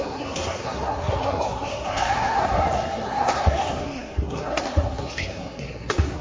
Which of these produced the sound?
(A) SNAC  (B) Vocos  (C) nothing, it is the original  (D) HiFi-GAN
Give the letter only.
A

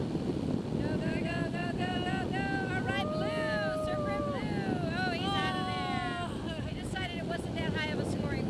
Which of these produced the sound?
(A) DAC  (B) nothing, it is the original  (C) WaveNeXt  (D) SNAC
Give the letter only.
B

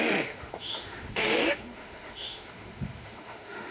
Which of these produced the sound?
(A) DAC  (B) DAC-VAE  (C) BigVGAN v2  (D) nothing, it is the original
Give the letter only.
B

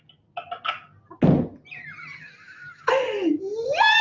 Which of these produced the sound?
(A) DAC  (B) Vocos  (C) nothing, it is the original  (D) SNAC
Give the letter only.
C